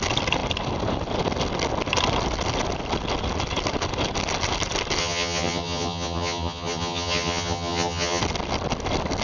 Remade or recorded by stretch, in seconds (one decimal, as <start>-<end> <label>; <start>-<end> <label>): 0.0-5.0 recorded; 5.0-8.2 remade; 8.2-9.2 recorded